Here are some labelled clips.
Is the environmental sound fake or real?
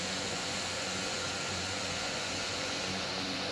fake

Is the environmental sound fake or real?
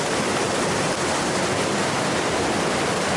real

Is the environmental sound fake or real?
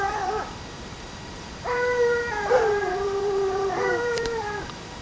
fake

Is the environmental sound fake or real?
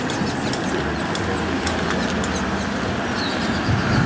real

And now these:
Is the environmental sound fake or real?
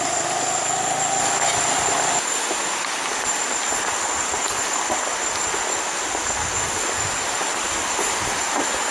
real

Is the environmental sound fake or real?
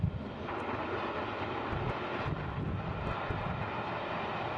real